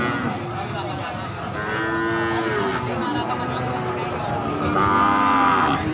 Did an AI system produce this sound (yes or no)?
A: no